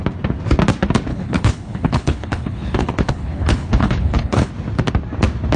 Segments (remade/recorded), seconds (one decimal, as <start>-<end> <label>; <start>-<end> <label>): 0.0-1.1 recorded; 1.1-4.5 remade; 4.5-5.6 recorded